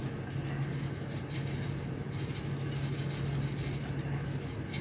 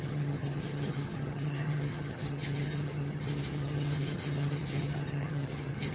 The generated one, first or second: second